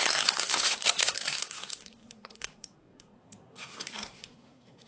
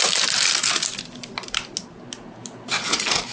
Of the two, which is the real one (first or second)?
second